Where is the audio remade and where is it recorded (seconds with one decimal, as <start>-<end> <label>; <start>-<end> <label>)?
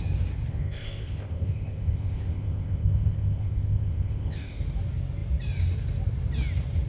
0.0-0.5 recorded; 0.5-4.6 remade; 4.6-6.9 recorded